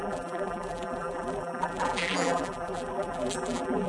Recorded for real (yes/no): no